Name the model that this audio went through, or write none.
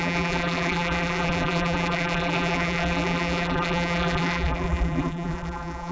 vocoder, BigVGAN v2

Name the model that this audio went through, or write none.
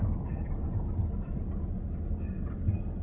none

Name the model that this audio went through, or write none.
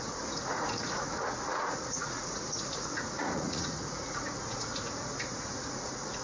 vocoder, Vocos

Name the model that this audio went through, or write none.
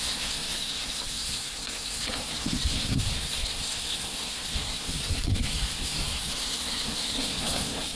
codec, SNAC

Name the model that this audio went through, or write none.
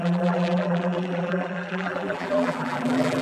vocoder, BigVGAN v2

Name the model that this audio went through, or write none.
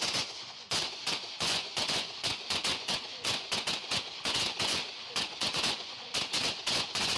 vocoder, Vocos